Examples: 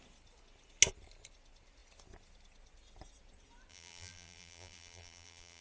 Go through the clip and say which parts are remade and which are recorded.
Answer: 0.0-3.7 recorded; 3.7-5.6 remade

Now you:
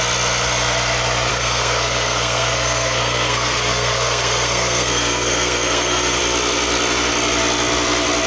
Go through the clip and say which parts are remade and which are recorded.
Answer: 0.0-1.3 recorded; 1.3-6.2 remade; 6.2-8.3 recorded